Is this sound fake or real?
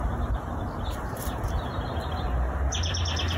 real